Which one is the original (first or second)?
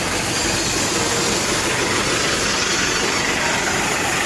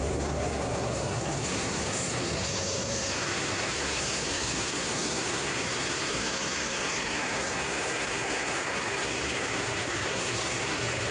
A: first